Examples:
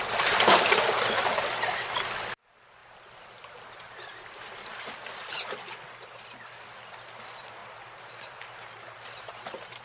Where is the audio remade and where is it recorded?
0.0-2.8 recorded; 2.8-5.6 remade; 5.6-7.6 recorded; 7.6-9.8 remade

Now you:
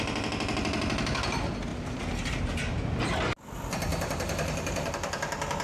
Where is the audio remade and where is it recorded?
0.0-1.7 recorded; 1.7-2.7 remade; 2.7-3.9 recorded; 3.9-4.9 remade; 4.9-5.6 recorded

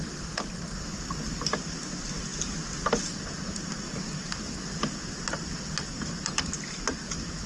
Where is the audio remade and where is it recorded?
0.0-7.5 recorded

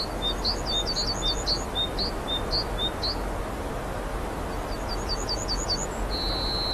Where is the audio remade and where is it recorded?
0.0-6.7 recorded

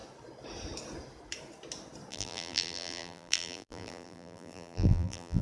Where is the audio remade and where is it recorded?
0.0-2.1 recorded; 2.1-5.4 remade

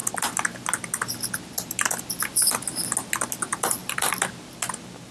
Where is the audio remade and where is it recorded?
0.0-3.8 recorded; 3.8-4.3 remade; 4.3-5.1 recorded

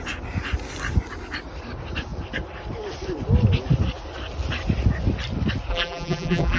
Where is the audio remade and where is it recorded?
0.0-5.7 recorded; 5.7-6.6 remade

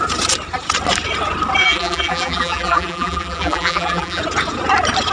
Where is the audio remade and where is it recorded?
0.0-1.6 recorded; 1.6-4.2 remade; 4.2-5.1 recorded